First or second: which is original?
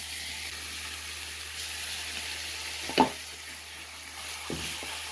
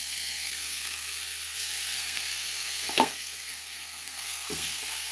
first